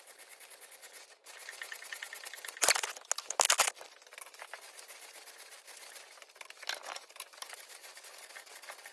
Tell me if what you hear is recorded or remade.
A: recorded